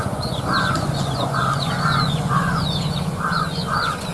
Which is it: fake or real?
fake